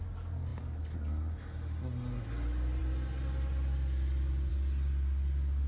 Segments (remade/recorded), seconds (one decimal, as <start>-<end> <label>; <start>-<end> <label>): 0.0-5.7 recorded